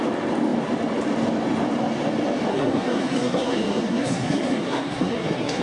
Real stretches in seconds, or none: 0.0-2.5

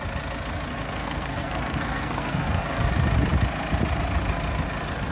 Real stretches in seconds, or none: 0.0-0.7; 2.9-5.1

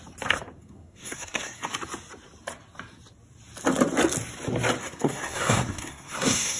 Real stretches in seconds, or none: 0.0-0.6; 1.7-4.8

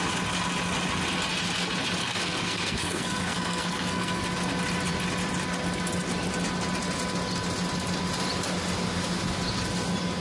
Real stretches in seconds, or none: 0.0-2.0; 4.2-10.2

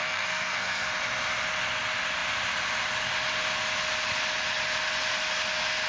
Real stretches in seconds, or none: 0.9-5.9

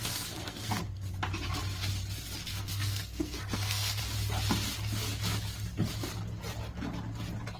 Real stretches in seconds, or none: 1.1-2.5; 4.0-7.6